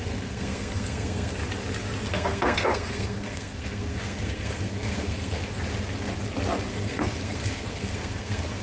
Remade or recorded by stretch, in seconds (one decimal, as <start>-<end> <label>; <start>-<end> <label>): 0.0-1.3 remade; 1.3-2.1 recorded; 2.1-5.4 remade; 5.4-6.7 recorded; 6.7-8.6 remade